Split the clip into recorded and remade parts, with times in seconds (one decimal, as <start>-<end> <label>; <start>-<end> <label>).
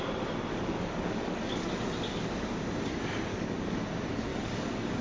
0.0-0.5 recorded; 0.5-1.8 remade; 1.8-3.3 recorded; 3.3-3.8 remade; 3.8-4.3 recorded; 4.3-5.0 remade